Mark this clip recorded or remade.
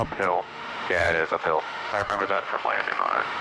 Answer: remade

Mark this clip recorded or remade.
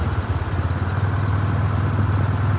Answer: recorded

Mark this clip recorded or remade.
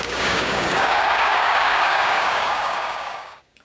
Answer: remade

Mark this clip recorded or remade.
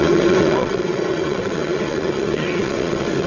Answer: remade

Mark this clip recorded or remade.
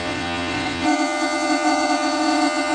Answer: remade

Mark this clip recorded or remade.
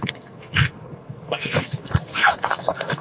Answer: remade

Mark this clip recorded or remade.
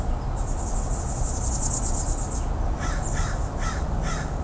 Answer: recorded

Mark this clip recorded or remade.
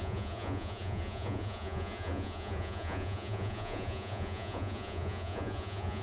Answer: remade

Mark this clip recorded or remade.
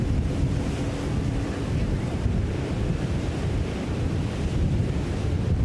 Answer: recorded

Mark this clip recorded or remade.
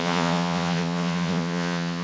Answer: remade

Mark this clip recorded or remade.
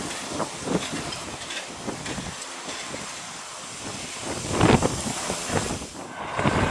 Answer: recorded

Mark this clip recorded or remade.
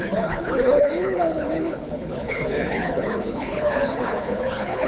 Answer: remade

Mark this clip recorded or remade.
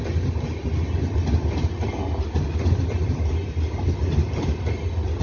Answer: recorded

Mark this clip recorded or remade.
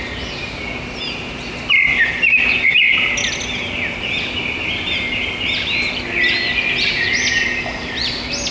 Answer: recorded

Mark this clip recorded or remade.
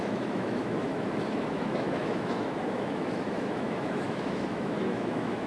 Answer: remade